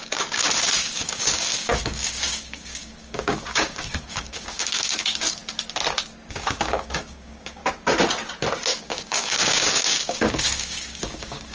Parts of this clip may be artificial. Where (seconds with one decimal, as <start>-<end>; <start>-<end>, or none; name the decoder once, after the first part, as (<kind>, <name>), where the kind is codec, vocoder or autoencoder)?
0.0-5.4 (codec, DAC); 6.3-7.6; 8.8-11.5